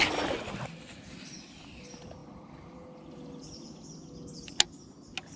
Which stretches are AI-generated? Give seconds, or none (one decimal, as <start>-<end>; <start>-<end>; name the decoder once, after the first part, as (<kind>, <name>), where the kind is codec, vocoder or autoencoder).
none